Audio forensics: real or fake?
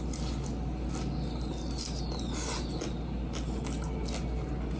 real